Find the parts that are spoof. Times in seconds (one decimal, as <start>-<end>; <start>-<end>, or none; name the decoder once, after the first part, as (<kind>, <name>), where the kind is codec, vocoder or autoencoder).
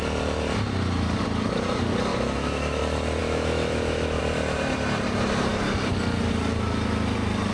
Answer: 2.1-2.8 (autoencoder, DAC-VAE); 3.2-4.2